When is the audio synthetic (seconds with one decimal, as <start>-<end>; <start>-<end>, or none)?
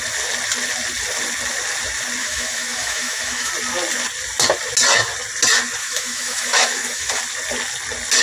2.2-3.5; 5.8-7.2